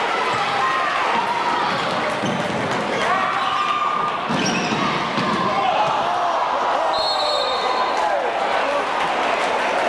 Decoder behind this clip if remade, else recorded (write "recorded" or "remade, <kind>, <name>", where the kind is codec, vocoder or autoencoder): recorded